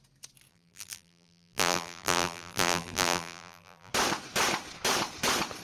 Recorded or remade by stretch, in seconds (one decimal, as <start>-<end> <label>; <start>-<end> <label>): 0.0-0.5 recorded; 0.5-3.9 remade; 3.9-5.6 recorded